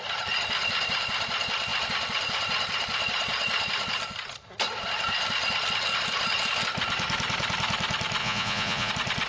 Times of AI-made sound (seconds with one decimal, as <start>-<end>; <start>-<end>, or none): 8.2-8.9